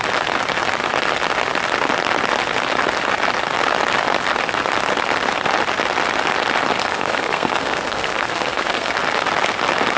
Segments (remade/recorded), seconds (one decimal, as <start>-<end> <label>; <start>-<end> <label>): 0.0-6.8 recorded; 6.8-8.9 remade; 8.9-10.0 recorded